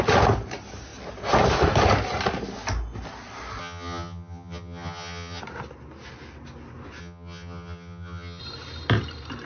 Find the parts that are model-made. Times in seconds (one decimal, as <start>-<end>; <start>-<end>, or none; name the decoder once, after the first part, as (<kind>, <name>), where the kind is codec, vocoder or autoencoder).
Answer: 3.6-5.4 (vocoder, HiFi-GAN); 7.0-8.4